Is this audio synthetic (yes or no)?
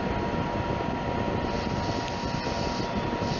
no